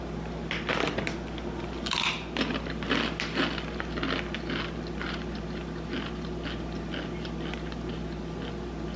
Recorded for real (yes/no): yes